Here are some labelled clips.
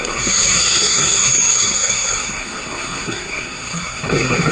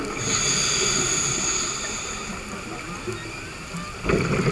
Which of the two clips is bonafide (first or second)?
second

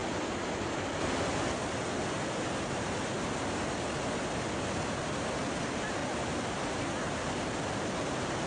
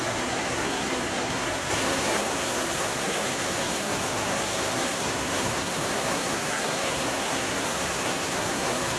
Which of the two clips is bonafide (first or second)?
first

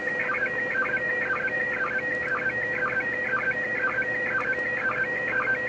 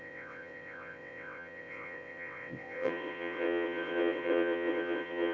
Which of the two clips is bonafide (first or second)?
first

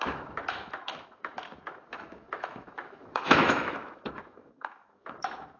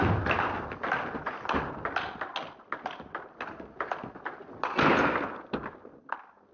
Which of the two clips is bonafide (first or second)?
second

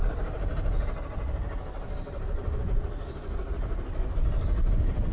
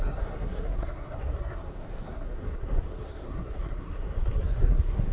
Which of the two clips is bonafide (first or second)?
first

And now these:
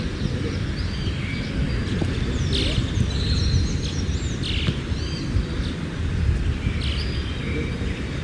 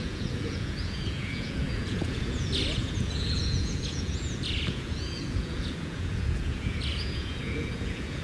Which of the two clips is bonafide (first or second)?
first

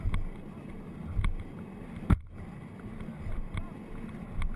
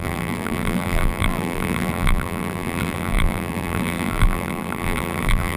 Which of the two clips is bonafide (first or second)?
first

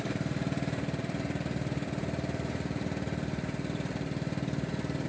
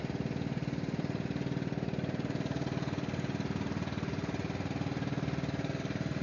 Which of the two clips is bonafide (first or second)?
second